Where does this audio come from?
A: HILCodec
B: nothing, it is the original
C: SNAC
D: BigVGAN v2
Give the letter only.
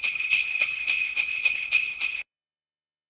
A